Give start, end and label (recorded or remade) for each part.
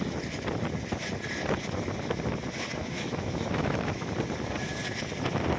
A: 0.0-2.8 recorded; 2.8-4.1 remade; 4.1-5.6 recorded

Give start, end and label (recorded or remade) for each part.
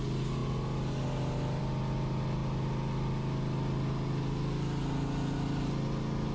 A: 0.0-6.3 recorded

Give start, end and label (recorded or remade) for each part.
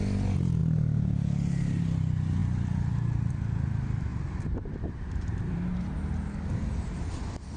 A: 0.0-7.6 recorded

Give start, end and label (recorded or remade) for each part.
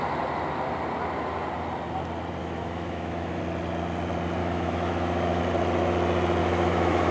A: 0.0-2.4 recorded; 2.4-3.4 remade; 3.4-4.4 recorded; 4.4-5.4 remade; 5.4-6.4 recorded; 6.4-7.1 remade